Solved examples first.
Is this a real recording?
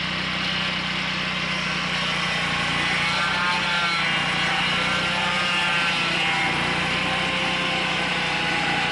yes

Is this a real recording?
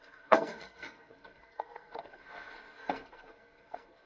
no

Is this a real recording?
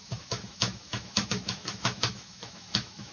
no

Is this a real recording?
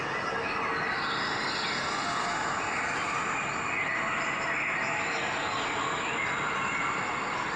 yes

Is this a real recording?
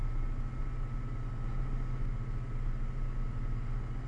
yes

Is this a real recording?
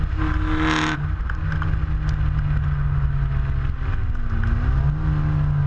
yes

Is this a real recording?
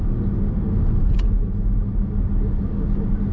yes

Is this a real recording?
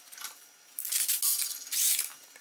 yes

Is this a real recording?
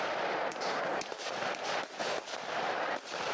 no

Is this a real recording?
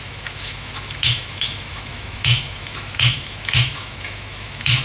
no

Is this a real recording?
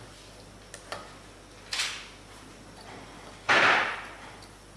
yes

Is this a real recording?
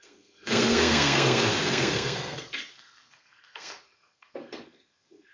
no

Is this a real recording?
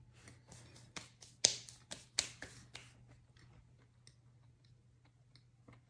yes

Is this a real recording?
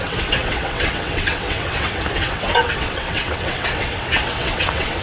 no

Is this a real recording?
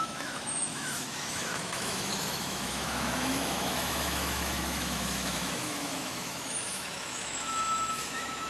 no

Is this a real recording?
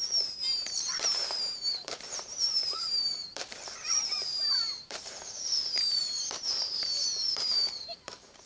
no